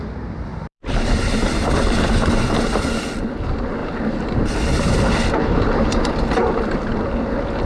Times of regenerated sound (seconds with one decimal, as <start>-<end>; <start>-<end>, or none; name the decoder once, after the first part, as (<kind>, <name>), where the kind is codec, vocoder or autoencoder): 0.5-2.1 (vocoder, BigVGAN v2); 3.8-5.0